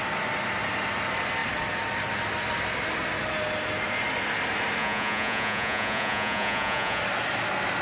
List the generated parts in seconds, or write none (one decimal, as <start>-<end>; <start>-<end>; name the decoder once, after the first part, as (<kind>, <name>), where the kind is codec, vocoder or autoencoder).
4.8-7.0 (vocoder, Vocos)

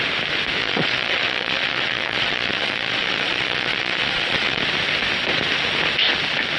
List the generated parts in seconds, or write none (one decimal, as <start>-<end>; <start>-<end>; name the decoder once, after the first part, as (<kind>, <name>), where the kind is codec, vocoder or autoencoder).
0.6-4.6 (vocoder, Vocos)